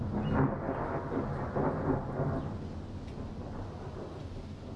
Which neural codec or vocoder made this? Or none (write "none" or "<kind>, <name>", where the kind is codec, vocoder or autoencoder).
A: none